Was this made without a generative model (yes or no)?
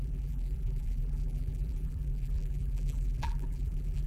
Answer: no